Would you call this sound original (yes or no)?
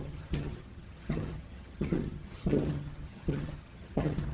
no